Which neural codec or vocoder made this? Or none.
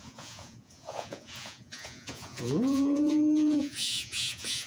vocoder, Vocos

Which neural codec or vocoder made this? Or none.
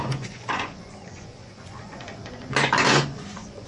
vocoder, Vocos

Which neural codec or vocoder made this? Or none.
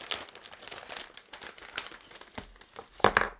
none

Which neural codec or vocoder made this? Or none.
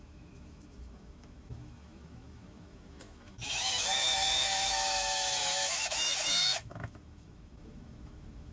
autoencoder, DAC-VAE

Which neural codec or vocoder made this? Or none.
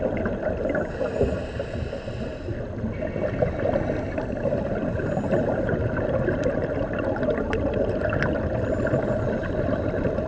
none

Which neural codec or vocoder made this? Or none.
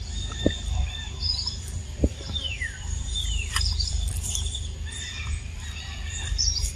vocoder, BigVGAN v2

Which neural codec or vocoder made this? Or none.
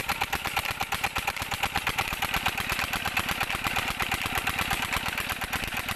none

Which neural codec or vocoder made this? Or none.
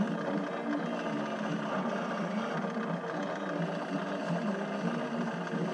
none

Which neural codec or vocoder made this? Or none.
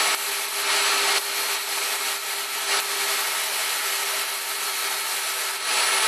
none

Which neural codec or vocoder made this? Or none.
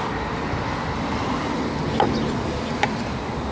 none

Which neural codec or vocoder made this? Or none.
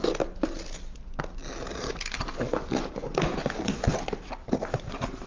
none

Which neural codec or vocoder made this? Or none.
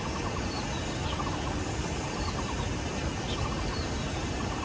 none